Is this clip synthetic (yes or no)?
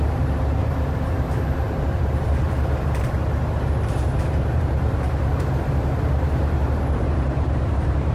yes